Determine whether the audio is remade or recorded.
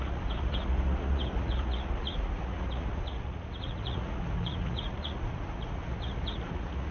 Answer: remade